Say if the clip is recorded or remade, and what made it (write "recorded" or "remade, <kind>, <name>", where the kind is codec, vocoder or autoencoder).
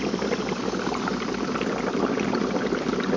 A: recorded